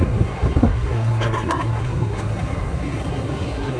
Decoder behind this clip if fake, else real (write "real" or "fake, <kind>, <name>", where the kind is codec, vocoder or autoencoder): fake, codec, SNAC